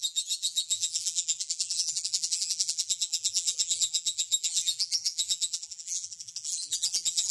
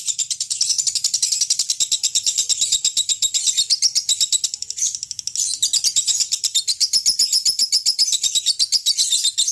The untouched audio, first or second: second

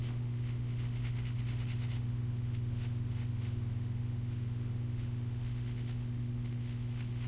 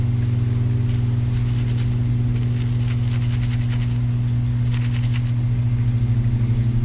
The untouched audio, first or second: second